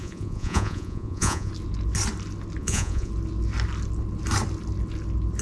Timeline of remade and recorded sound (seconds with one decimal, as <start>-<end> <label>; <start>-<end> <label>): 0.0-1.5 remade; 1.5-2.6 recorded; 2.6-3.1 remade; 3.1-5.4 recorded